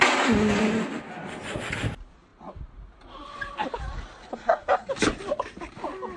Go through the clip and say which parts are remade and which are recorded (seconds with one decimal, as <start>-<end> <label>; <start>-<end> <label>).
0.0-4.3 recorded; 4.3-4.9 remade; 4.9-6.2 recorded